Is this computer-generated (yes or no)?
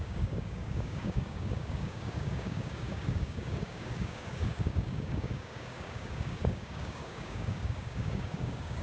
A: yes